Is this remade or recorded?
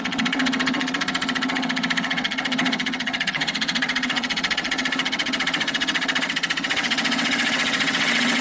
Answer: remade